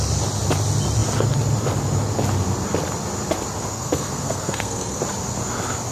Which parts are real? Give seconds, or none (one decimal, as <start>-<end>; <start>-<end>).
0.0-3.7; 5.0-5.9